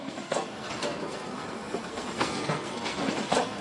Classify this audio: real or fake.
fake